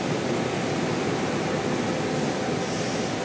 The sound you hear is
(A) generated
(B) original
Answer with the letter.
B